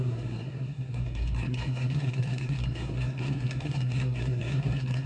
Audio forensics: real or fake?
fake